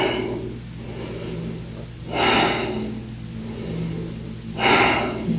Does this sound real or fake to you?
real